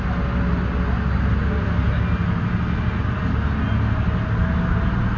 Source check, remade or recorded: recorded